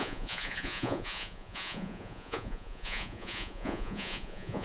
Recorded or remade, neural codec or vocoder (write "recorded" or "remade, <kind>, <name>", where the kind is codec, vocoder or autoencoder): remade, vocoder, Vocos